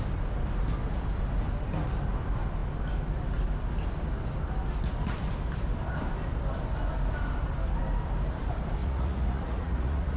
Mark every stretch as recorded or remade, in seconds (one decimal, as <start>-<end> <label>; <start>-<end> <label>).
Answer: 0.0-8.8 recorded; 8.8-10.2 remade